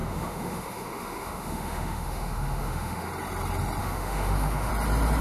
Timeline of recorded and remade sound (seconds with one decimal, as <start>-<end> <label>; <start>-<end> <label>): 0.0-3.1 remade; 3.1-3.8 recorded; 3.8-4.7 remade; 4.7-5.2 recorded